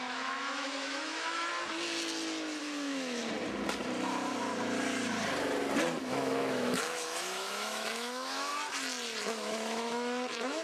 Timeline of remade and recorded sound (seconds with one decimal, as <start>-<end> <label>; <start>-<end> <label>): 0.0-1.5 remade; 1.5-2.6 recorded; 2.6-3.2 remade; 3.2-6.0 recorded; 6.0-8.5 remade; 8.5-9.2 recorded; 9.2-10.6 remade